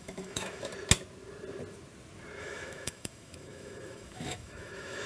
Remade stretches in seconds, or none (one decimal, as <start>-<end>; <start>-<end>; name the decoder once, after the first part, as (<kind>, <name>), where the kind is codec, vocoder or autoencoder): 0.0-0.7 (autoencoder, DAC-VAE); 2.4-5.1